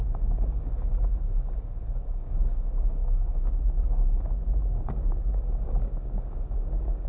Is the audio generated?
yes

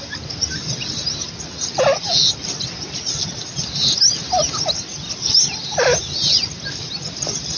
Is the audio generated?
no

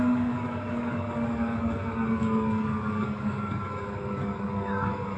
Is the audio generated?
yes